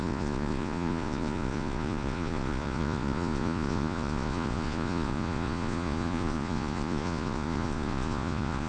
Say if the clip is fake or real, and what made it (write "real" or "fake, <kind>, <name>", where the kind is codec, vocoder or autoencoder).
fake, vocoder, Vocos